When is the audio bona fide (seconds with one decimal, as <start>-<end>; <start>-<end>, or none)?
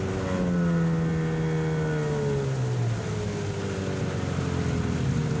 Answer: 0.0-5.4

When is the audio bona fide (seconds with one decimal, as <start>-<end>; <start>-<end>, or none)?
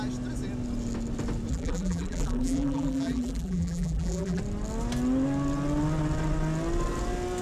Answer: 0.0-1.5; 4.4-7.4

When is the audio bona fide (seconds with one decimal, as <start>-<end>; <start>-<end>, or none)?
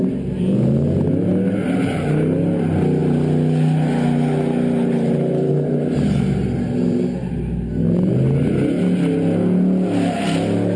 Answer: 0.0-10.8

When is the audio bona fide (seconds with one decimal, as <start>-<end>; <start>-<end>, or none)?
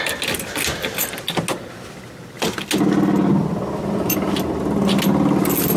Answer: 0.0-5.8